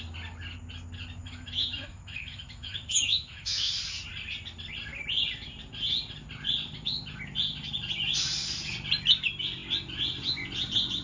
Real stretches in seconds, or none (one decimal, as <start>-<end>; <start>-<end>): 0.0-1.2; 3.7-11.0